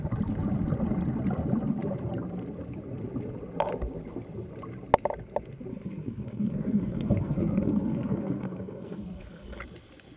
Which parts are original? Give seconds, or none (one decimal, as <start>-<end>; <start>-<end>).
0.0-5.7; 9.6-10.2